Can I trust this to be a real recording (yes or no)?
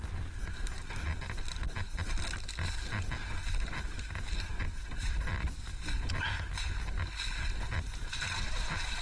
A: yes